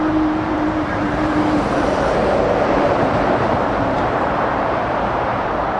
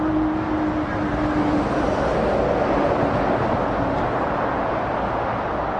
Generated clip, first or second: first